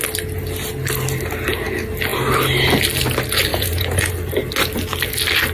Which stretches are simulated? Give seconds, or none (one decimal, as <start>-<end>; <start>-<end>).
3.5-4.1